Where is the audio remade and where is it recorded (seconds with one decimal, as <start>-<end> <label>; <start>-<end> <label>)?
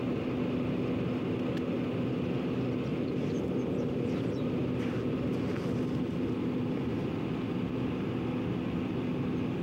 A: 0.0-2.9 recorded; 2.9-5.9 remade; 5.9-9.6 recorded